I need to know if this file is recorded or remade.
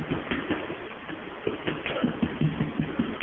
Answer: recorded